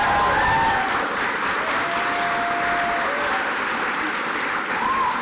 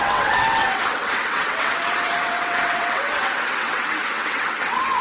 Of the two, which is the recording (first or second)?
first